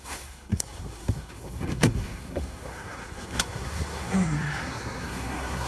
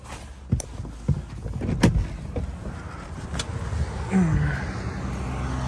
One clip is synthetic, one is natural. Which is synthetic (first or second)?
first